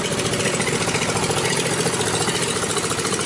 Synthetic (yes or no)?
no